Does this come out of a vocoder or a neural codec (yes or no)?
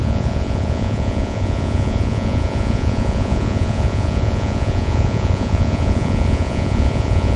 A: yes